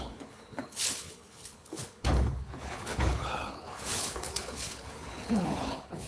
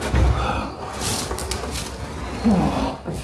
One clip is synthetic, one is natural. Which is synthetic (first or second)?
first